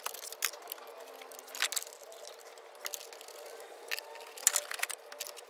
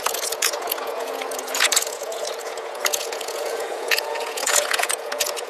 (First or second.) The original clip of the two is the first